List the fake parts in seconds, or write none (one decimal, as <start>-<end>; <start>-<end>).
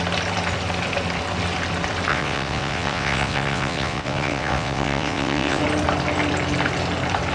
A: 2.1-5.6